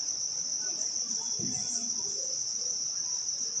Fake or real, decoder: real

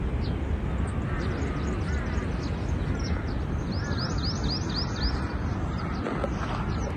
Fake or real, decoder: real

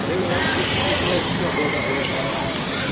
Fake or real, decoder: fake, vocoder, BigVGAN v2